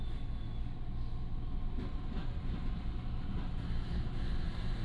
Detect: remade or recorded recorded